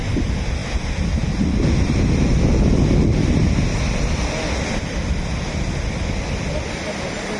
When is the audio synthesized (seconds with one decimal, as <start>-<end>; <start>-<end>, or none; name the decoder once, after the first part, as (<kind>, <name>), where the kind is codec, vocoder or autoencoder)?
none